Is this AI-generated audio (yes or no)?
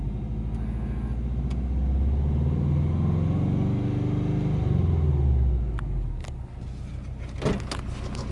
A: no